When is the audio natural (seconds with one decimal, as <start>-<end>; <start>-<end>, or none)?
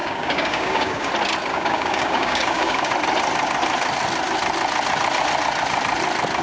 1.1-1.5; 2.9-6.4